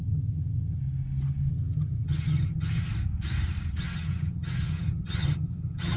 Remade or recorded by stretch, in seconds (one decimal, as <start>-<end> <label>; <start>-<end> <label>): 0.0-0.8 remade; 0.8-1.5 recorded; 1.5-2.9 remade; 2.9-3.8 recorded; 3.8-6.0 remade